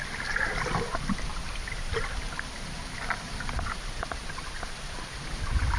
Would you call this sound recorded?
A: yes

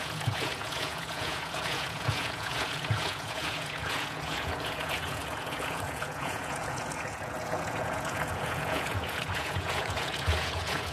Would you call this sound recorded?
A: no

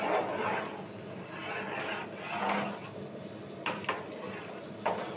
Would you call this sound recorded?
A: yes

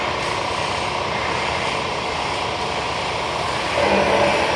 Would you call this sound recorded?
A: yes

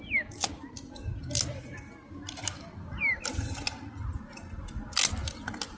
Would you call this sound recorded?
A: yes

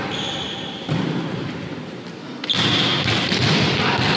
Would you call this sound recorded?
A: yes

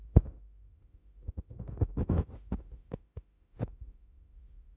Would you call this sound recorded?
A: no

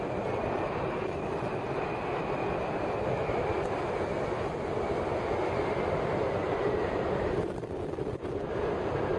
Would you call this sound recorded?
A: yes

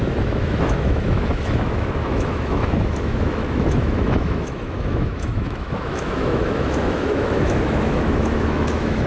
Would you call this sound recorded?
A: no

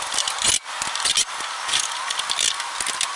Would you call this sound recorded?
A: yes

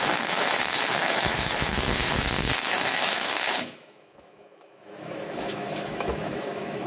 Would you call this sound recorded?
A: no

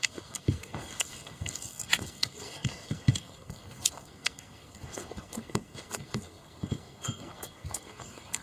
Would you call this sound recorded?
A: no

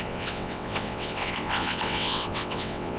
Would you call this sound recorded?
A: no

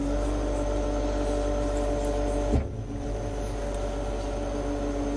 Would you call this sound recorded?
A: yes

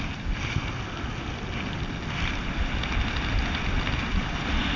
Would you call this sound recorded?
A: yes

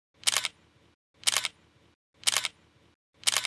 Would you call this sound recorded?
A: yes